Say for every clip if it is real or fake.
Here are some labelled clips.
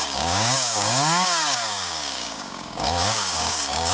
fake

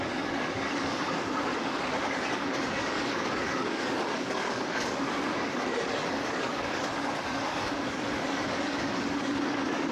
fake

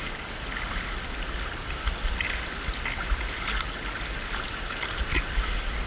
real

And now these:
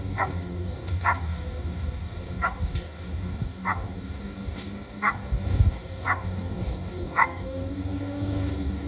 fake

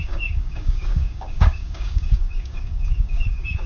fake